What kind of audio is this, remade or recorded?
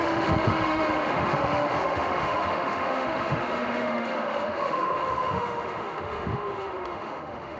remade